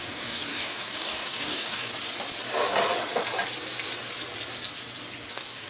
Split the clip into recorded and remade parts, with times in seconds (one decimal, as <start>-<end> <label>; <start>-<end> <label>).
0.0-1.9 remade; 1.9-5.3 recorded; 5.3-5.7 remade